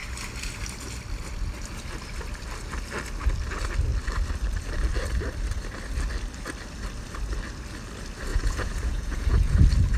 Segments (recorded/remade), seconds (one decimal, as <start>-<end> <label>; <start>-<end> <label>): 0.0-8.3 recorded; 8.3-9.6 remade; 9.6-10.0 recorded